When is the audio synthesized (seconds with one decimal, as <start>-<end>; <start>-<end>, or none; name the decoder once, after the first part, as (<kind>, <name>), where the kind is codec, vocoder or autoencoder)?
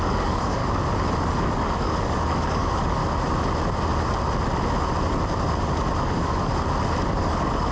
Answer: 0.0-0.6 (codec, DAC); 1.3-3.0; 6.0-6.5; 7.1-7.7